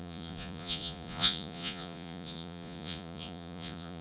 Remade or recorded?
remade